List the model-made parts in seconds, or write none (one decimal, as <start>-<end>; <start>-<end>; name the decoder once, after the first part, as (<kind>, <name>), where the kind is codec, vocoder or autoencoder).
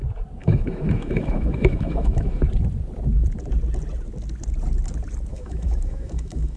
0.4-2.4 (autoencoder, DAC-VAE); 5.3-6.6